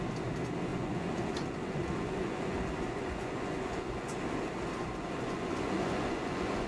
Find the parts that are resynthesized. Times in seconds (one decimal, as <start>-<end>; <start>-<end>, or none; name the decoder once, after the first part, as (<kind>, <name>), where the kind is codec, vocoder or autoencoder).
0.7-4.2 (vocoder, Vocos); 4.8-6.7